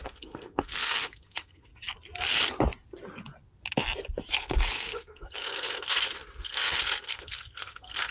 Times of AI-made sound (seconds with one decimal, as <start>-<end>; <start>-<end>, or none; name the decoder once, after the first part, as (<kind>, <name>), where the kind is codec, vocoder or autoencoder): 0.0-1.7 (codec, SNAC); 4.3-8.1